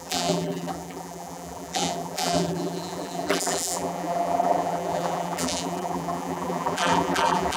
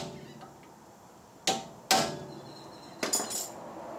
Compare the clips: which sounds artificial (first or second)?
first